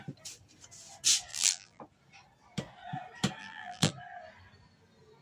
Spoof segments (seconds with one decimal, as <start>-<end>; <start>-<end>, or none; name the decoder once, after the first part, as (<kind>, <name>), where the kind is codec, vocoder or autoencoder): 1.3-1.8 (vocoder, BigVGAN v2); 3.4-3.9